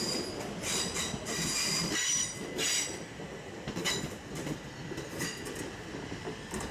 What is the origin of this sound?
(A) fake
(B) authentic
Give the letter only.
B